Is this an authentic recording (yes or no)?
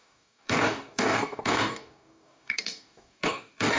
no